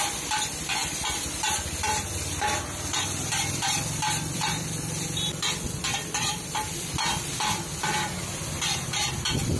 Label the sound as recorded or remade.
remade